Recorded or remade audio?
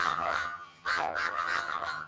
remade